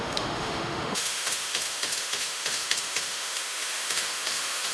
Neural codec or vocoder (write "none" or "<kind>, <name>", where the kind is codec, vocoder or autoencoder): autoencoder, DAC-VAE